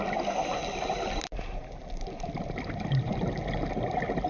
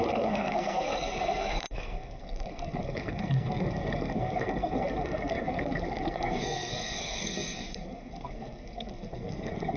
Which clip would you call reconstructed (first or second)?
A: second